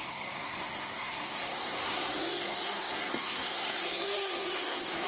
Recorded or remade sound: remade